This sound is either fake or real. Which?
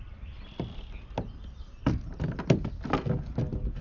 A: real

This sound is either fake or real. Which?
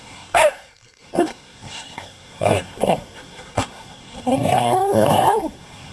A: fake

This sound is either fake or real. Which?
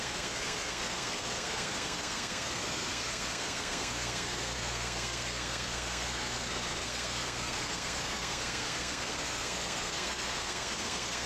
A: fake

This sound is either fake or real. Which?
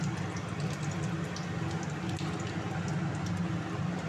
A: real